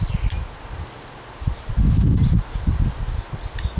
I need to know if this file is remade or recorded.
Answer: recorded